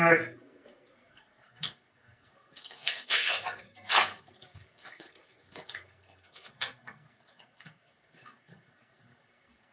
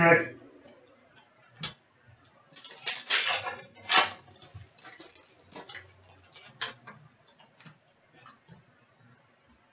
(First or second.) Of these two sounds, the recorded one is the second